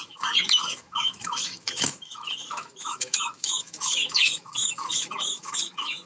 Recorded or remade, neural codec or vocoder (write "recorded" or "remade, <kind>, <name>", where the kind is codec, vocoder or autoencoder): remade, autoencoder, DAC-VAE